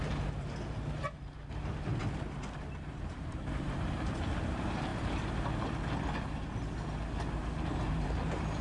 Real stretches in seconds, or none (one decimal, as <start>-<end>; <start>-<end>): 4.9-7.9